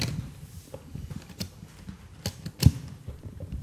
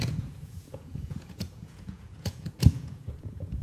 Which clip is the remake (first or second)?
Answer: second